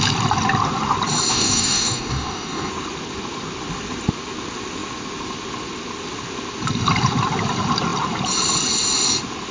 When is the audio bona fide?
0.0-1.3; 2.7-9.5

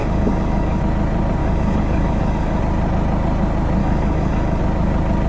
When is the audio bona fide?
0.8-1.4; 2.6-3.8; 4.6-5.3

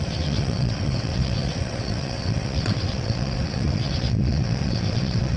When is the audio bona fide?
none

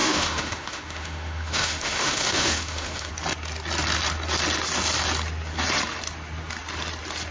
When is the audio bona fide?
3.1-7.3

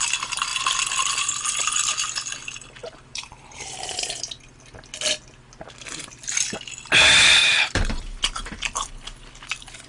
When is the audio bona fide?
0.0-2.8; 4.0-7.4; 8.0-9.9